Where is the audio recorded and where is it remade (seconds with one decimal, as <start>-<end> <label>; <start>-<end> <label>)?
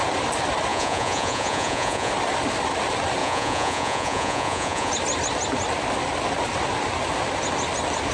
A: 0.0-0.7 recorded; 0.7-2.1 remade; 2.1-3.2 recorded; 3.2-4.9 remade; 4.9-8.1 recorded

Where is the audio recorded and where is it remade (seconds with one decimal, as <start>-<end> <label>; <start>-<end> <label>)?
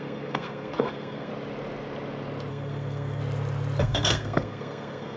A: 0.0-1.3 remade; 1.3-2.5 recorded; 2.5-3.2 remade; 3.2-3.8 recorded; 3.8-5.2 remade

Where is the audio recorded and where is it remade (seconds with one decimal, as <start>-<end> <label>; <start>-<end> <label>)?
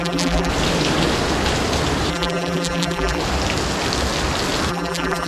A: 0.0-0.5 remade; 0.5-2.1 recorded; 2.1-3.2 remade; 3.2-4.7 recorded; 4.7-5.3 remade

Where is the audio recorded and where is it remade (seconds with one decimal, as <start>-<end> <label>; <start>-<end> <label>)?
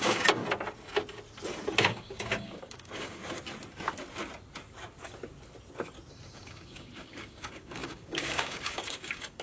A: 0.0-0.4 remade; 0.4-1.8 recorded; 1.8-3.2 remade; 3.2-6.3 recorded; 6.3-9.4 remade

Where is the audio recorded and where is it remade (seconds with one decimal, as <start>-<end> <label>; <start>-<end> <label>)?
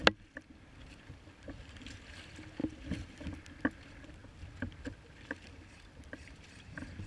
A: 0.0-7.1 recorded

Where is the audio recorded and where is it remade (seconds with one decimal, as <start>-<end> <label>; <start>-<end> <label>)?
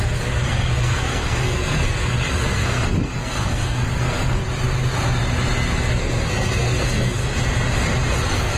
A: 0.0-4.4 remade; 4.4-5.9 recorded; 5.9-7.2 remade; 7.2-8.2 recorded; 8.2-8.6 remade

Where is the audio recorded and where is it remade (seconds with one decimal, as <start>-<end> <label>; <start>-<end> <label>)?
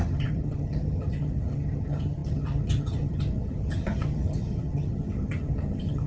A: 0.0-6.1 remade